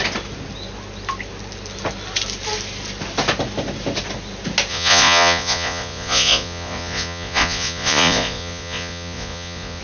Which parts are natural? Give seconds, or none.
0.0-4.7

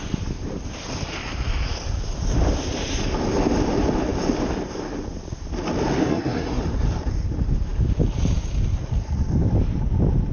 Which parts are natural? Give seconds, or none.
0.0-6.0; 6.6-10.3

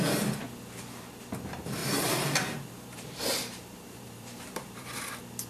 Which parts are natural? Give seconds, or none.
0.0-1.8; 5.1-5.5

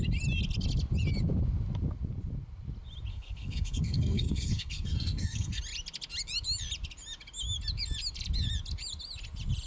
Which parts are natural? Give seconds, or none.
0.0-3.1; 5.6-9.7

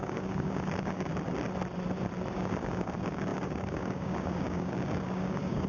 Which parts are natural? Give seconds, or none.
1.1-2.3

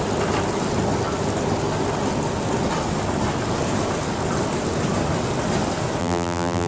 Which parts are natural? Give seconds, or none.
0.0-6.0

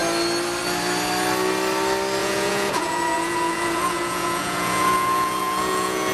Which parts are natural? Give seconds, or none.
0.0-2.2